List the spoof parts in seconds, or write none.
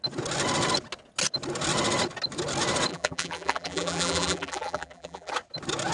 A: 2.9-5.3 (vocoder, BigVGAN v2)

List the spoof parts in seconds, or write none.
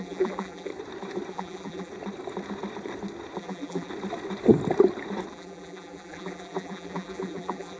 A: 0.0-0.7 (vocoder, BigVGAN v2); 1.3-1.9; 3.4-3.9; 5.3-7.8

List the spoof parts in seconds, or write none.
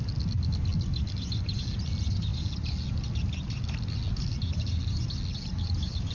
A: none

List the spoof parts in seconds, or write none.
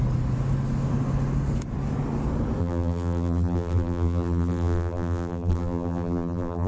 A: 2.6-6.7 (vocoder, BigVGAN v2)